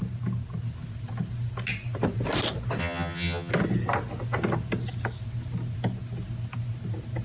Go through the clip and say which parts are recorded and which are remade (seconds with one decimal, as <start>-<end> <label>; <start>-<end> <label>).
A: 0.0-2.8 recorded; 2.8-3.5 remade; 3.5-7.2 recorded